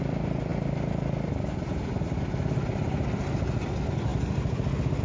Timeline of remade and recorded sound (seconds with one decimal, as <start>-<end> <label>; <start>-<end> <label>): 0.0-5.0 recorded